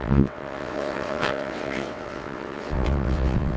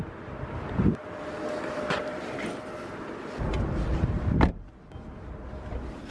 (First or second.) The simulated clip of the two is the first